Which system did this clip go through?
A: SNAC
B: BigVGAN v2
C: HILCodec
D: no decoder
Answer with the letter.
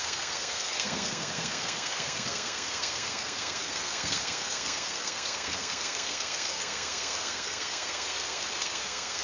A